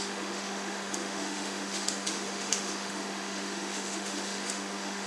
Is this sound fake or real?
fake